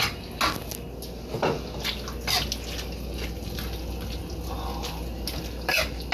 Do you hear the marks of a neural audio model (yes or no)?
no